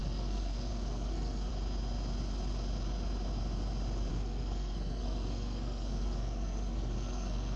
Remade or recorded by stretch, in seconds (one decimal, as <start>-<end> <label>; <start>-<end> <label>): 0.0-1.5 remade; 1.5-4.1 recorded; 4.1-7.6 remade